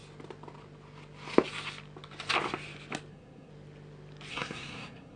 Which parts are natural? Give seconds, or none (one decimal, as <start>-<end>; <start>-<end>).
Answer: 0.0-3.1; 3.5-4.3